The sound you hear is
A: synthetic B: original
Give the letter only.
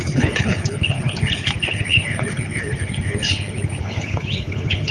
A